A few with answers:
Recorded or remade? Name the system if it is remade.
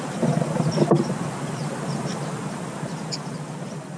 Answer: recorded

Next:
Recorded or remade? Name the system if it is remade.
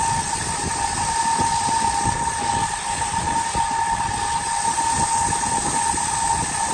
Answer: recorded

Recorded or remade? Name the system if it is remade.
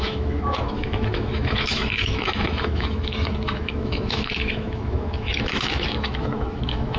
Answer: remade, autoencoder, DAC-VAE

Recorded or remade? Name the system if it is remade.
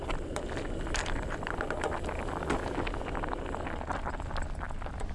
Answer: recorded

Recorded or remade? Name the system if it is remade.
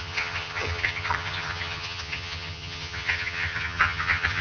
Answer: remade, vocoder, HiFi-GAN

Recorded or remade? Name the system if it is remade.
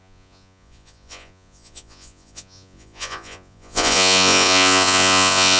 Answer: remade, vocoder, Vocos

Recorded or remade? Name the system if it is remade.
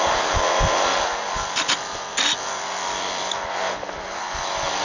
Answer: recorded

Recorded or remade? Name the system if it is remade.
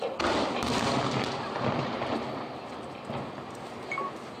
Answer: recorded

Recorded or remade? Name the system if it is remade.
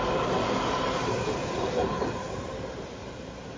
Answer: recorded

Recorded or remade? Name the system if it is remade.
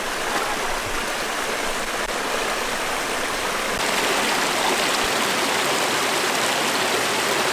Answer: recorded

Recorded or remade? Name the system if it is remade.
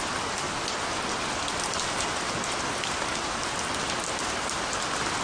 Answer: recorded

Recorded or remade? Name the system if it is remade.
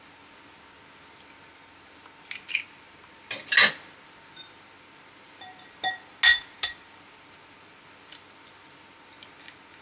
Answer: recorded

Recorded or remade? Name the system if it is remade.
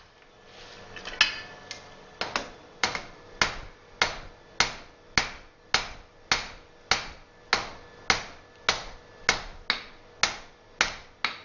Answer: recorded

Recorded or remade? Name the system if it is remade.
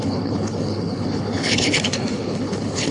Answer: remade, codec, HILCodec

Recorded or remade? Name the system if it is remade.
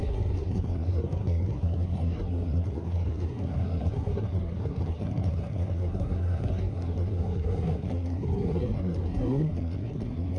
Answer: remade, codec, SNAC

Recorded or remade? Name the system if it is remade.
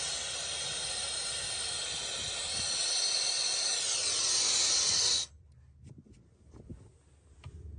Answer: recorded